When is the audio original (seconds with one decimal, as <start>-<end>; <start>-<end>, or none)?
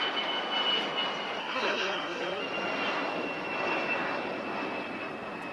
0.0-1.4; 2.4-5.5